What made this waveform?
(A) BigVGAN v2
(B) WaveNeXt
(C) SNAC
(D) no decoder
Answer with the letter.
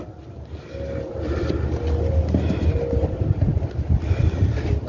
D